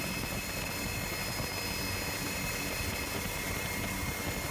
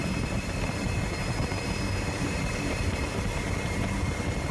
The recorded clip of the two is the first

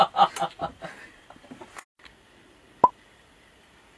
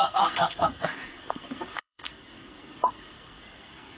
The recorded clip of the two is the first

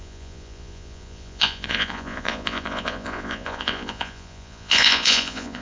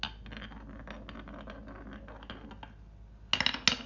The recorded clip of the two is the second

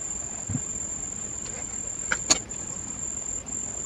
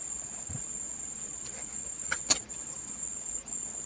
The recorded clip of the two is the first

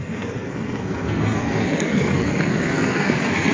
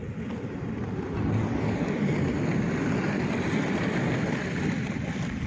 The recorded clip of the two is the second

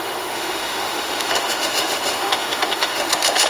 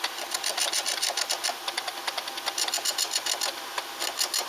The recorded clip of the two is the second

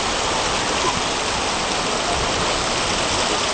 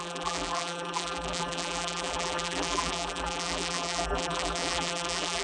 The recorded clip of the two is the first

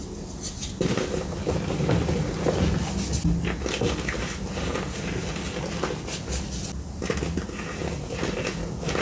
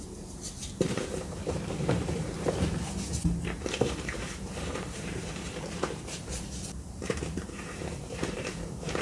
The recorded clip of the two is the first